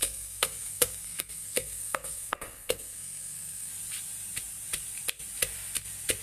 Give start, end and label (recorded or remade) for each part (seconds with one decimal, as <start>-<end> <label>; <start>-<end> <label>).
0.0-3.7 remade; 3.7-6.2 recorded